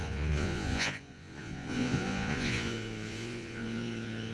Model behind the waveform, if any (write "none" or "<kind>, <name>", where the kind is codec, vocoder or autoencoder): vocoder, Vocos